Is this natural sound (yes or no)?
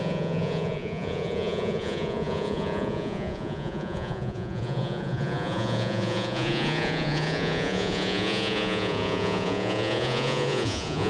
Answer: no